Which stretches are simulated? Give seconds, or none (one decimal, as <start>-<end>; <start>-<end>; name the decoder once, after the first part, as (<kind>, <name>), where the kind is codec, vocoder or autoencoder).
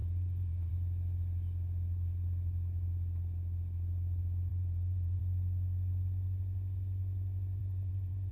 0.0-0.7 (vocoder, BigVGAN v2); 4.5-5.2; 7.6-8.3